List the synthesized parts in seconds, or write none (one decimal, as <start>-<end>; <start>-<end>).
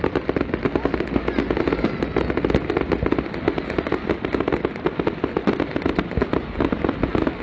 none